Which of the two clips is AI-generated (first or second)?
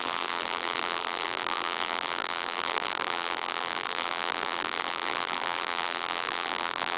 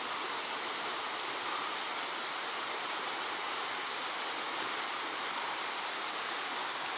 first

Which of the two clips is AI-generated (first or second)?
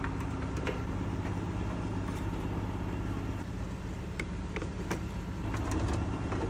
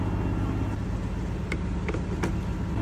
first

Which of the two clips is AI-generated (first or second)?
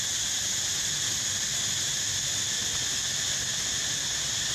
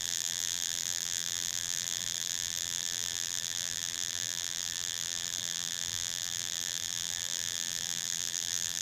second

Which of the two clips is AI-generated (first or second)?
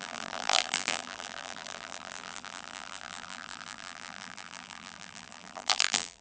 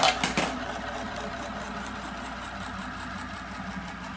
first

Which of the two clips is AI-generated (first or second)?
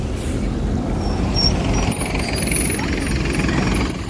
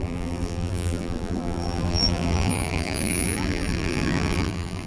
second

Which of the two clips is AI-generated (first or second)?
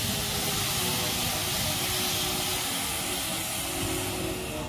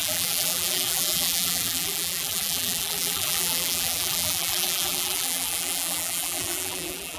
second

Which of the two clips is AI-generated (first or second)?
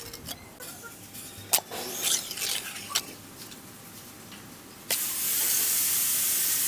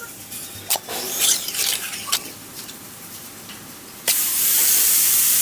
second